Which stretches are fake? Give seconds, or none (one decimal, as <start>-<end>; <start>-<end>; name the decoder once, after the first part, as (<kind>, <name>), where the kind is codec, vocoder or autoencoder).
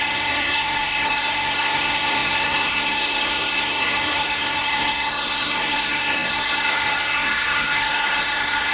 0.0-8.7 (codec, SNAC)